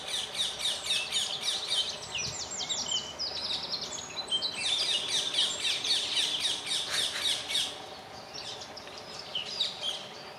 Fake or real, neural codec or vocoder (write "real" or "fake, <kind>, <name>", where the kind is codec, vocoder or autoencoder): real